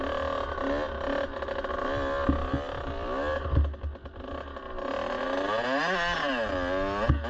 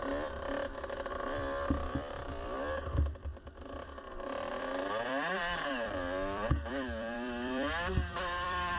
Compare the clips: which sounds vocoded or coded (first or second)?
second